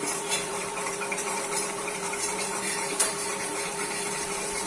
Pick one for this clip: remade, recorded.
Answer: remade